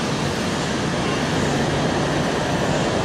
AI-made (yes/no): no